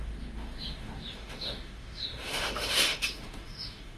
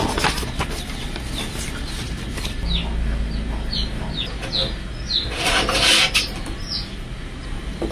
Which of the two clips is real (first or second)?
second